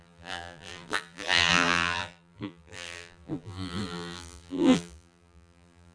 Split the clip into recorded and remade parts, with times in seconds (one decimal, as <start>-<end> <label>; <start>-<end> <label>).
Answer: 0.0-5.9 remade